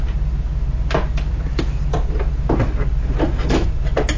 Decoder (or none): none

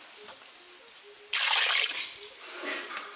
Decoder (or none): none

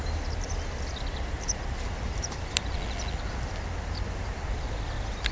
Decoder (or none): none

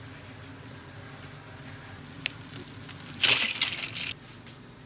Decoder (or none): none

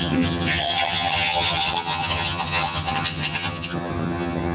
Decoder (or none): vocoder, HiFi-GAN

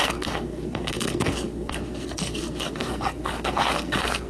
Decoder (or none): codec, SNAC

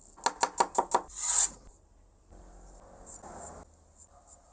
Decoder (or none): none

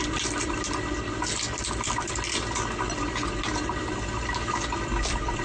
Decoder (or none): none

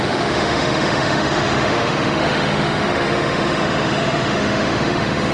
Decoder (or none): autoencoder, DAC-VAE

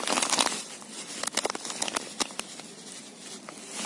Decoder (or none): none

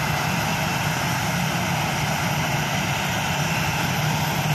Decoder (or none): vocoder, BigVGAN v2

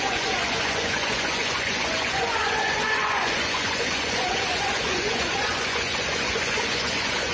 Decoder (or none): vocoder, Vocos